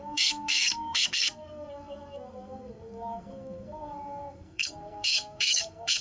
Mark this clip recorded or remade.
remade